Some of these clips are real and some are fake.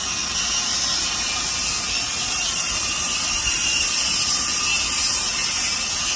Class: real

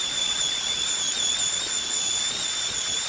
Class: fake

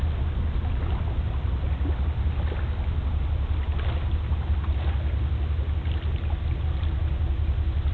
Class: real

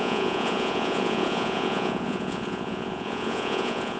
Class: fake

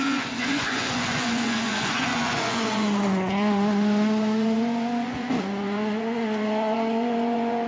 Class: fake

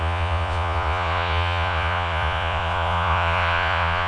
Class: fake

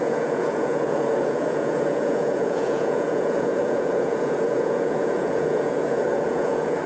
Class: fake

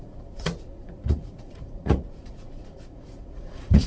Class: fake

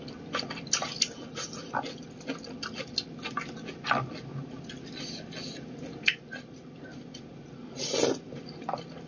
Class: real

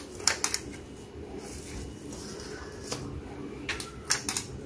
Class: real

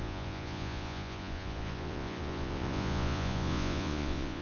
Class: fake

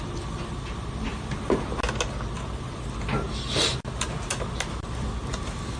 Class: real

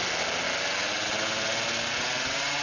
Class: real